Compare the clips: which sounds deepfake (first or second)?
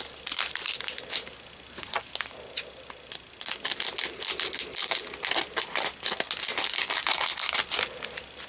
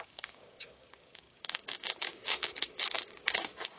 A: second